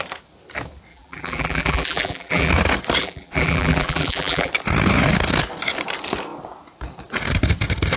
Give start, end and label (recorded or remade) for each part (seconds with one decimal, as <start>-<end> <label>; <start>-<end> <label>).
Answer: 0.0-0.9 recorded; 0.9-2.5 remade; 2.5-3.0 recorded; 3.0-4.5 remade; 4.5-8.0 recorded